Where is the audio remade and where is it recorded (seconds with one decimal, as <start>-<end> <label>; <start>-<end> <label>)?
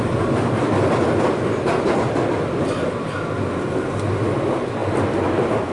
0.0-5.7 recorded